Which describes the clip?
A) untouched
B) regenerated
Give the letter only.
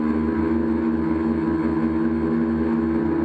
A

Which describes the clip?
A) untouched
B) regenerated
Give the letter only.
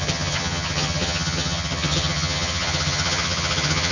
B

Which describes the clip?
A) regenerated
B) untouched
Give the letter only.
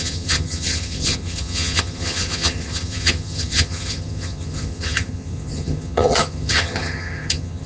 A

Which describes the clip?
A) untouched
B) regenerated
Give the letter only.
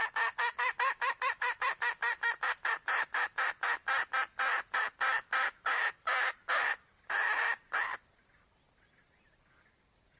A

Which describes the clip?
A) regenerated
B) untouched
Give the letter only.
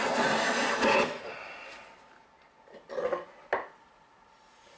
B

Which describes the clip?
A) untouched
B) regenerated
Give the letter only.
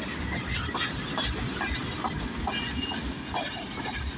A